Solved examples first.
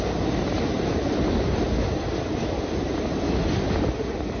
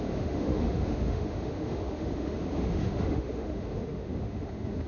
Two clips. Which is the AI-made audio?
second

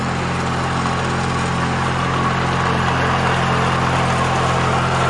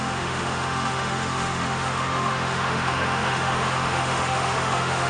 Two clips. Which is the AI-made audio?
second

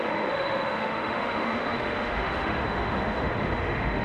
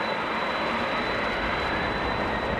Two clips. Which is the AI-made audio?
first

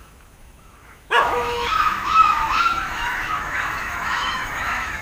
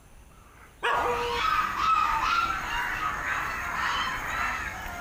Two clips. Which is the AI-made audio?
first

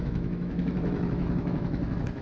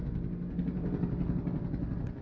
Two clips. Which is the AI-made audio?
first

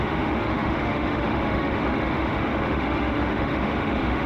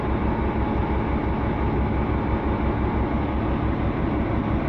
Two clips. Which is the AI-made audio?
first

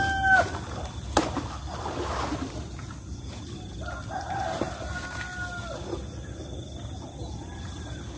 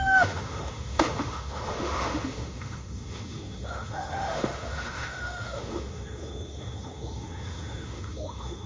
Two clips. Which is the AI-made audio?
second